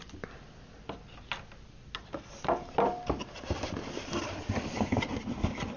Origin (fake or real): real